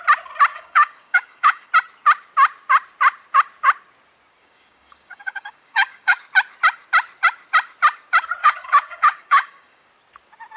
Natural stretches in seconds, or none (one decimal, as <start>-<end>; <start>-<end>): 0.0-0.5; 1.7-4.4; 6.2-8.4; 9.9-10.6